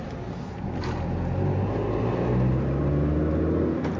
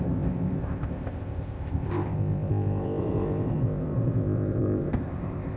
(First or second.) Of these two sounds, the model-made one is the second